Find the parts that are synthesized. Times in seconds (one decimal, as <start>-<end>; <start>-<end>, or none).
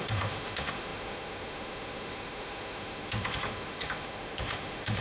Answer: 0.0-5.0